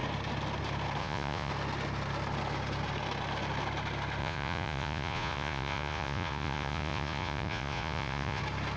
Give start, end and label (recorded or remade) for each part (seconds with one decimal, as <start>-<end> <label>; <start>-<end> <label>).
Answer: 0.0-1.0 recorded; 1.0-1.5 remade; 1.5-4.2 recorded; 4.2-8.4 remade; 8.4-8.8 recorded